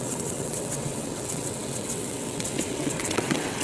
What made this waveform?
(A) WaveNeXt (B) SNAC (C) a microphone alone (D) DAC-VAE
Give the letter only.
A